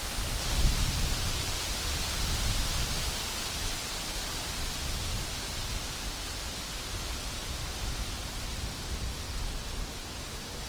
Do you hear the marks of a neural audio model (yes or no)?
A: yes